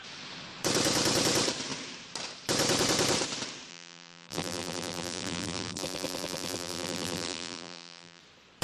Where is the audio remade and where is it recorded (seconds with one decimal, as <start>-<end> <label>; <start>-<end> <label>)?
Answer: 0.0-3.7 recorded; 3.7-8.2 remade; 8.2-8.6 recorded